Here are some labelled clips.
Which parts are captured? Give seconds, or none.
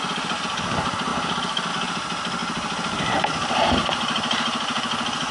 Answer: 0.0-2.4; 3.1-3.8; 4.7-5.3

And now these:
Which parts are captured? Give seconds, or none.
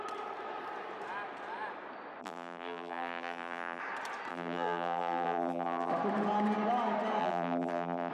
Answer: 0.0-2.2; 3.8-4.3; 5.9-7.2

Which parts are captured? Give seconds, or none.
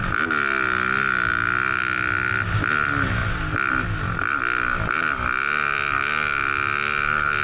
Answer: 0.0-3.2; 3.7-7.4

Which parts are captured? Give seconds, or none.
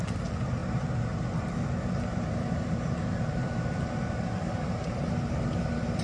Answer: 0.0-2.1; 4.9-6.0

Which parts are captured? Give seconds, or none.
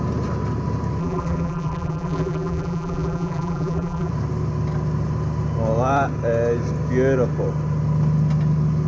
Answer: 0.0-1.0; 4.1-8.9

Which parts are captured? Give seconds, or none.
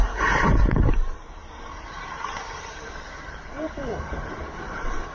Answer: none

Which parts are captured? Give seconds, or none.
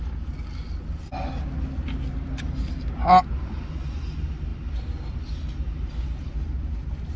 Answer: 0.0-7.2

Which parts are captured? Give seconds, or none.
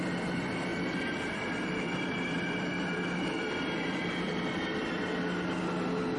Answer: 0.0-0.7; 4.4-6.2